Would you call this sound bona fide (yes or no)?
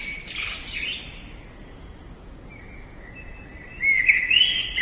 yes